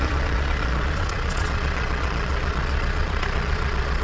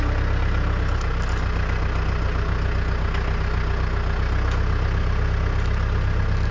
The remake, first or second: first